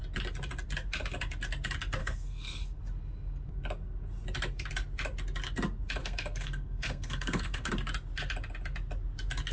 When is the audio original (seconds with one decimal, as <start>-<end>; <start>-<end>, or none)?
0.0-2.0; 2.8-6.0; 7.7-9.5